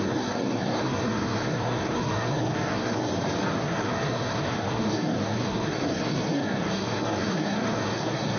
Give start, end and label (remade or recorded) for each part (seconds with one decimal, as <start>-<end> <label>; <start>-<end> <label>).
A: 0.0-3.1 remade; 3.1-3.6 recorded; 3.6-8.4 remade